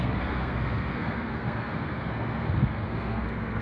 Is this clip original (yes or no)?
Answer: no